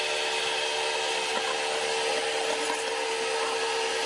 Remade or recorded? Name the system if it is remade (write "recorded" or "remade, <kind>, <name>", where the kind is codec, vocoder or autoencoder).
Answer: recorded